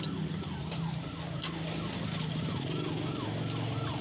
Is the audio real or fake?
real